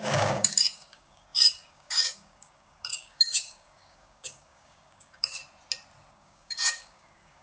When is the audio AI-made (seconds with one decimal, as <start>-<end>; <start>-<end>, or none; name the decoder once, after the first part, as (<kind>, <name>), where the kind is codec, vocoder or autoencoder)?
0.0-5.4 (codec, DAC); 6.1-7.4